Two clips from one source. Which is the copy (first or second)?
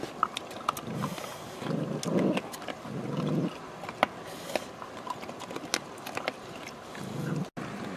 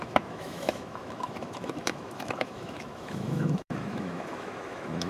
second